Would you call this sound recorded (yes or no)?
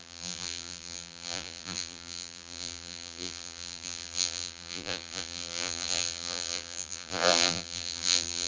no